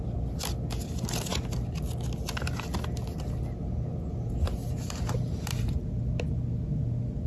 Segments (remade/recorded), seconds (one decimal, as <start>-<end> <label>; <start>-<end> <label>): 0.0-4.1 recorded; 4.1-6.1 remade; 6.1-7.3 recorded